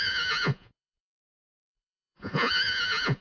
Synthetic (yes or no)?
yes